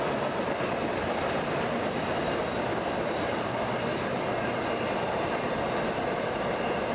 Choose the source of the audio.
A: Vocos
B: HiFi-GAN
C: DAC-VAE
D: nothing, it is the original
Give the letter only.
D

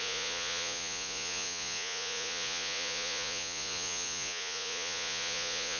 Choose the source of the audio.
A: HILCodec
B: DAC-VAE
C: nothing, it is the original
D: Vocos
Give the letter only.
D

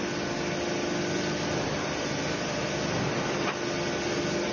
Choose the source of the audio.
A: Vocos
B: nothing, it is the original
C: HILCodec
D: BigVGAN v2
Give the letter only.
B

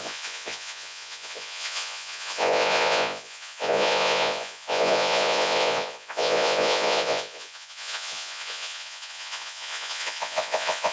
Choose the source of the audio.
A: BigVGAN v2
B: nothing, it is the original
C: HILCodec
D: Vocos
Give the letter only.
D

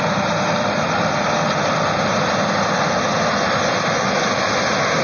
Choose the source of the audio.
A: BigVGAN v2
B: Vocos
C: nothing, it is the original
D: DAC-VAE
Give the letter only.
C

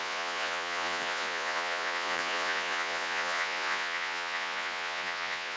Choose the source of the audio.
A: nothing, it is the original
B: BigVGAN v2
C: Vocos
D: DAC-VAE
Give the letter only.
C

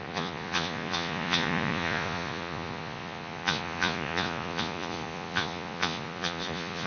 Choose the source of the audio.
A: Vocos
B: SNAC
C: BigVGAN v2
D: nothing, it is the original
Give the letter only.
A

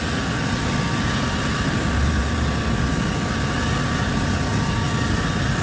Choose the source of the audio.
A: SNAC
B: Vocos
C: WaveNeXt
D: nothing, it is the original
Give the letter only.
D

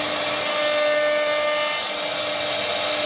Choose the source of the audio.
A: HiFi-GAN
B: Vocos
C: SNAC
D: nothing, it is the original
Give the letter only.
D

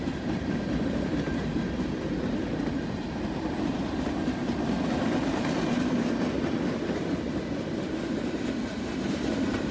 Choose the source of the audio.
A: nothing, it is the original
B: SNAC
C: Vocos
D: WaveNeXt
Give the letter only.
A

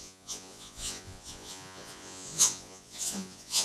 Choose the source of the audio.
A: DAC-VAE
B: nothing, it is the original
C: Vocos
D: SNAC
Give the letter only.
C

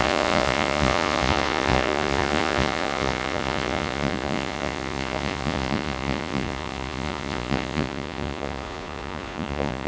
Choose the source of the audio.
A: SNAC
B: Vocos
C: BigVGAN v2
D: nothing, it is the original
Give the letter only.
B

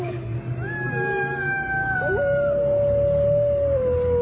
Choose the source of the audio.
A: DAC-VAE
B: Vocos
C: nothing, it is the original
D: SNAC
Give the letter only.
C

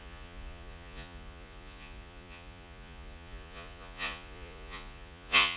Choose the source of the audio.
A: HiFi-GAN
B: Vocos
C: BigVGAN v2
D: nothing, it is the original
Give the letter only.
B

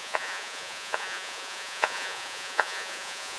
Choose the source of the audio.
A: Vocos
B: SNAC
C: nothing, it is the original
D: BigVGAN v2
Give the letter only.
A